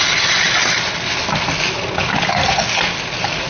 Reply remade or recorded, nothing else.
recorded